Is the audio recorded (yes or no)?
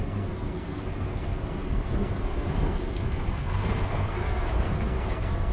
no